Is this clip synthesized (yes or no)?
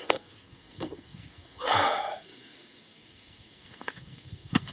yes